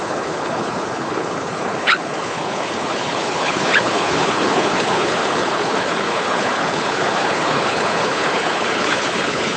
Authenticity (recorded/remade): remade